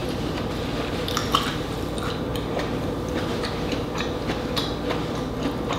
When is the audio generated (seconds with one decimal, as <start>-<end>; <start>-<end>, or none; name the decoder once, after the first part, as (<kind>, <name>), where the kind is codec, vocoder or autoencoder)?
0.0-0.5 (vocoder, BigVGAN v2); 1.2-1.8; 2.3-4.7